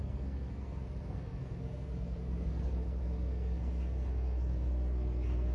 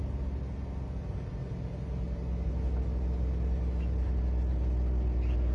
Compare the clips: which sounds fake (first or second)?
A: first